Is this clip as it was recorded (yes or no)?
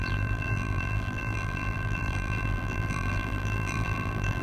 no